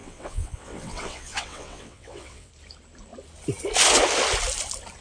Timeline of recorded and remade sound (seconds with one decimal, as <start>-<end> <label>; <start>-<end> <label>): 0.0-2.5 remade; 2.5-5.0 recorded